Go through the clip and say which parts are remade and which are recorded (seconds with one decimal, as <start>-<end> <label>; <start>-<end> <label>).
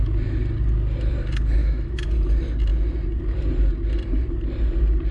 0.0-1.6 recorded; 1.6-2.1 remade; 2.1-5.1 recorded